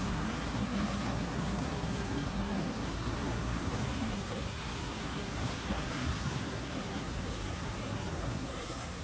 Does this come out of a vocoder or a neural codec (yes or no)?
yes